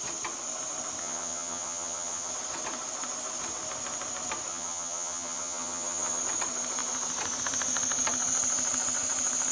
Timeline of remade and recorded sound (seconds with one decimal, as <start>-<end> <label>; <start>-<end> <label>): 0.0-1.0 recorded; 1.0-2.3 remade; 2.3-4.5 recorded; 4.5-6.2 remade; 6.2-9.5 recorded